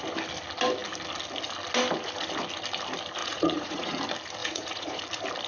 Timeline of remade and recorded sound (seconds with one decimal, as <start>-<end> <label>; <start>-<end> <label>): 0.0-3.2 recorded; 3.2-4.0 remade; 4.0-4.4 recorded; 4.4-5.0 remade; 5.0-5.5 recorded